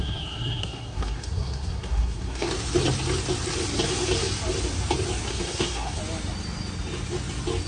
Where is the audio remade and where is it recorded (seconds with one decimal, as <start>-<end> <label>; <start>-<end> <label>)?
0.0-2.5 remade; 2.5-5.3 recorded; 5.3-6.0 remade; 6.0-7.7 recorded

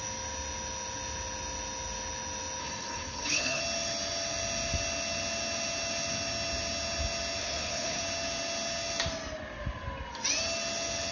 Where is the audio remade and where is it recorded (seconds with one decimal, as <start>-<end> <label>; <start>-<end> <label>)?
0.0-2.6 recorded; 2.6-3.6 remade; 3.6-7.4 recorded; 7.4-8.0 remade; 8.0-11.1 recorded